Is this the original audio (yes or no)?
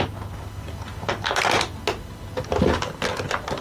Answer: yes